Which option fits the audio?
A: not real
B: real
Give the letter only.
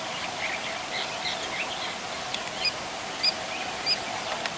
B